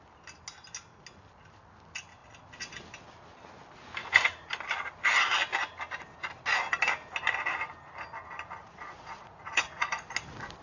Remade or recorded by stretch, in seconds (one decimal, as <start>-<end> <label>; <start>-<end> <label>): 0.0-4.0 recorded; 4.0-4.5 remade; 4.5-8.6 recorded; 8.6-10.0 remade; 10.0-10.6 recorded